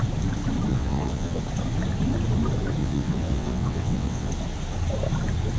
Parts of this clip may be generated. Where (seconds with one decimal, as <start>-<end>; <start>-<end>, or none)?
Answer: 0.7-1.4; 2.8-4.3